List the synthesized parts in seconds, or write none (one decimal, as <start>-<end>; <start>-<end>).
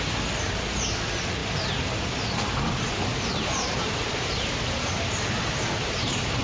3.3-6.4